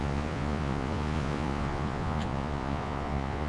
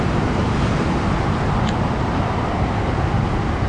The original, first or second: second